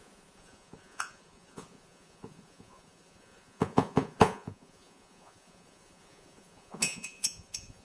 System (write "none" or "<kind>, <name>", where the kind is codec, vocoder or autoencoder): vocoder, Vocos